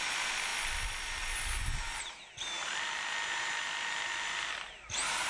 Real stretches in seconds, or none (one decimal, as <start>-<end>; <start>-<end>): none